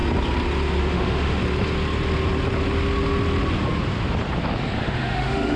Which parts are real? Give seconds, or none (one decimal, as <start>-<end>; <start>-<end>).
0.0-0.8; 1.4-4.8